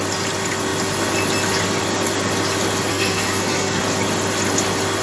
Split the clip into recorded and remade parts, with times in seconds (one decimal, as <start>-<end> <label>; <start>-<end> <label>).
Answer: 0.0-2.9 recorded; 2.9-3.8 remade; 3.8-5.0 recorded